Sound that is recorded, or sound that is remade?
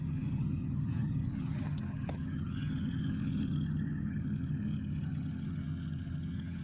remade